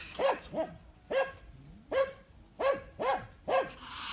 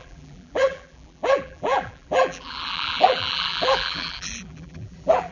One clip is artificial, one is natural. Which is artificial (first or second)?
second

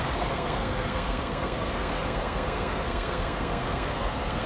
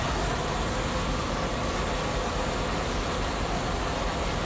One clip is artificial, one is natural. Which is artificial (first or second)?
first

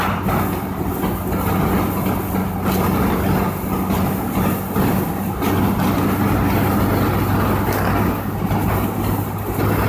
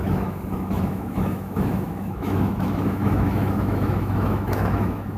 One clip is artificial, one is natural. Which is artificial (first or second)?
second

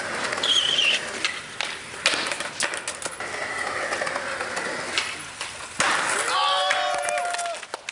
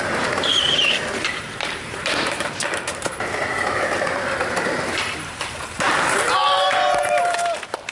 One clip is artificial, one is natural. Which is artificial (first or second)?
second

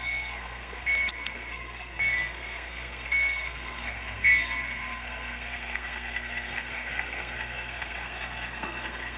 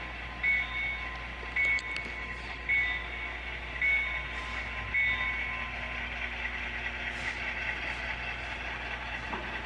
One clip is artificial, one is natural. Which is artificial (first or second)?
first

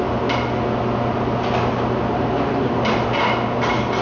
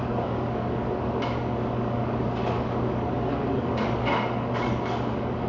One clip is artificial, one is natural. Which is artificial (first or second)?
second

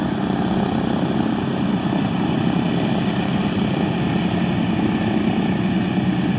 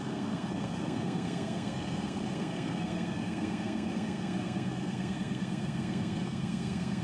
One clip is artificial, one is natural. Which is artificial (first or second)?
second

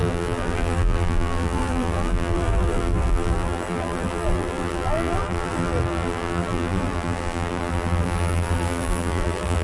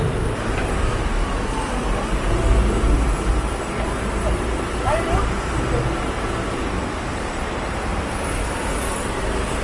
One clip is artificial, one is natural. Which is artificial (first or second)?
first